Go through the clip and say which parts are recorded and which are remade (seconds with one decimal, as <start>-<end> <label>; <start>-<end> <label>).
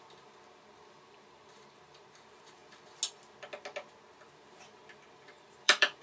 0.0-2.6 remade; 2.6-4.3 recorded; 4.3-6.0 remade